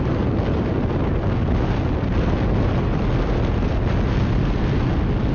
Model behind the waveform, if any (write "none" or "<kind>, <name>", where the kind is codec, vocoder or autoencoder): none